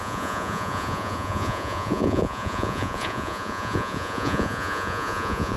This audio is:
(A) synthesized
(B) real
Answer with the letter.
A